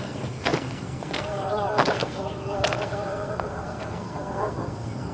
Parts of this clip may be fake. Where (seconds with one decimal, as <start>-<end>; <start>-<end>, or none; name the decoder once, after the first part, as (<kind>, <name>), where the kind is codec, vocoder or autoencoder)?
0.0-5.1 (codec, SNAC)